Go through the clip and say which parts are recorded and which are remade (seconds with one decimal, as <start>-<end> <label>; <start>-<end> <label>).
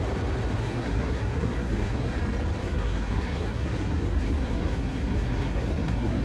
0.0-0.6 recorded; 0.6-2.2 remade; 2.2-2.6 recorded; 2.6-6.2 remade